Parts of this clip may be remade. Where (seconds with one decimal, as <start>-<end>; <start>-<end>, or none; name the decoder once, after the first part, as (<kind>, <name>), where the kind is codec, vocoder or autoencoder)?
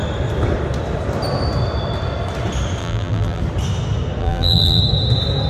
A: 2.8-3.4 (vocoder, BigVGAN v2); 4.2-4.8